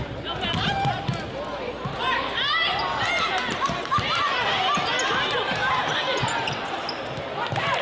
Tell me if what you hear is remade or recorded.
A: recorded